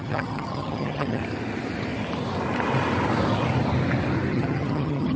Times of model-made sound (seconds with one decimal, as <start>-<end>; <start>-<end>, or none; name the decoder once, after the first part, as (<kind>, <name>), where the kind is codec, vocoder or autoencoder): 0.0-1.2 (vocoder, HiFi-GAN); 4.3-5.2